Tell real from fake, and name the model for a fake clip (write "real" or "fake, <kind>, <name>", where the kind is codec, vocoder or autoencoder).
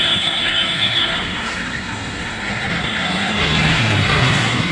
fake, codec, SNAC